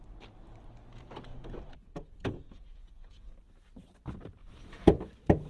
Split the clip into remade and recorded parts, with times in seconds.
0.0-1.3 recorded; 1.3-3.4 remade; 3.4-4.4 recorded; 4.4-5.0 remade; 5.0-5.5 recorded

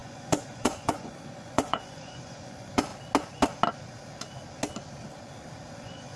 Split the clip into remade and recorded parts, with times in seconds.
0.0-2.9 remade; 2.9-5.7 recorded; 5.7-6.2 remade

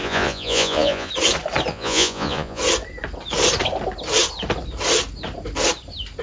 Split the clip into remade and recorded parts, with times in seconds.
0.0-1.1 remade; 1.1-1.7 recorded; 1.7-2.6 remade; 2.6-6.2 recorded